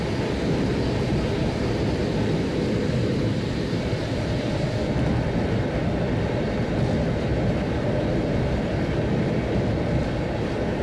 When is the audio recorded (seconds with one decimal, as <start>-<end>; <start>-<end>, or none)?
0.0-1.4; 5.1-7.3; 10.2-10.8